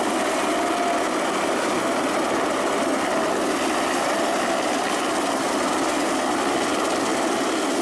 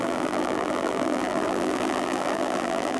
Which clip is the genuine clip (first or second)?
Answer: first